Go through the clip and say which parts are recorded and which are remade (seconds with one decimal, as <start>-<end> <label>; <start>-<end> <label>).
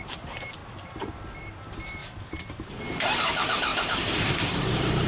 0.0-0.6 remade; 0.6-1.4 recorded; 1.4-2.0 remade; 2.0-3.1 recorded; 3.1-5.1 remade